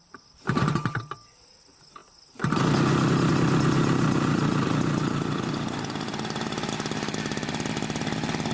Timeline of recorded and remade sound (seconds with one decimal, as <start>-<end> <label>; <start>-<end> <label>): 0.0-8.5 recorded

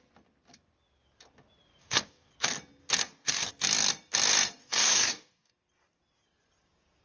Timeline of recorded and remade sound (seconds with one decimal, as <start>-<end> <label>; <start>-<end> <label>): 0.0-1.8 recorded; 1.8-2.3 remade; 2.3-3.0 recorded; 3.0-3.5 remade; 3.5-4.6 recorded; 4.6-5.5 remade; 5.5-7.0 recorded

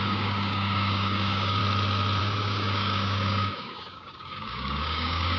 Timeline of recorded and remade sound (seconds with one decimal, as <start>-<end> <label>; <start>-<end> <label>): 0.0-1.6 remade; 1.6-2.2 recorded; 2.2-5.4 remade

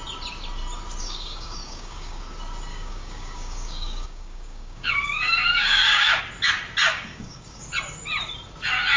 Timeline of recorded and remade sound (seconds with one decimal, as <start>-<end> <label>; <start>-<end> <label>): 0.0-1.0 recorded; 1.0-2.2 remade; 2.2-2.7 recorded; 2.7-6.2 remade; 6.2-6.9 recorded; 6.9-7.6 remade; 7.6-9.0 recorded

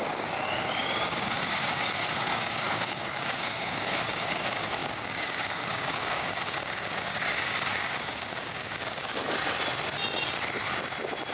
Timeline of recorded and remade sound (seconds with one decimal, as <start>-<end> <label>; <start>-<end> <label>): 0.0-9.2 remade; 9.2-11.3 recorded

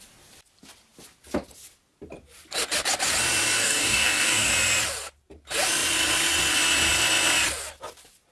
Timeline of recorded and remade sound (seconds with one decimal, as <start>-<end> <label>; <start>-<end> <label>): 0.0-3.6 recorded; 3.6-4.5 remade; 4.5-8.3 recorded

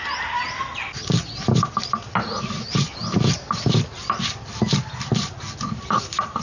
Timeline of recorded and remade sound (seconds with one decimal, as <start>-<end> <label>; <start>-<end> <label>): 0.0-6.4 recorded

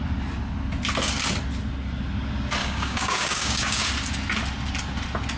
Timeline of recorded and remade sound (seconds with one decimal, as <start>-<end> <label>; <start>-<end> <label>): 0.0-2.6 recorded; 2.6-3.9 remade; 3.9-5.4 recorded